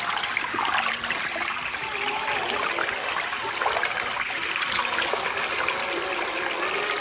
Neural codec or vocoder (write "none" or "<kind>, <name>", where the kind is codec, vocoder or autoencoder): none